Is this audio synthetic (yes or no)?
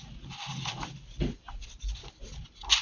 no